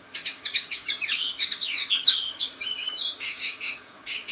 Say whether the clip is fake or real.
fake